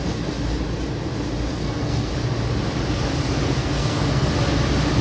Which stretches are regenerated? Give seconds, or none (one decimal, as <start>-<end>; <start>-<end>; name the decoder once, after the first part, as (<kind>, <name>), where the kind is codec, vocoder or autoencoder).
1.5-2.1 (codec, SNAC); 3.6-4.3